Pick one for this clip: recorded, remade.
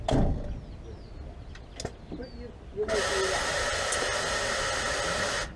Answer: recorded